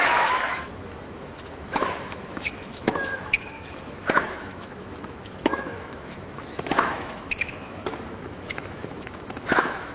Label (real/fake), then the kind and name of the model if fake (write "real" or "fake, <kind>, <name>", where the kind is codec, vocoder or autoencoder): fake, autoencoder, DAC-VAE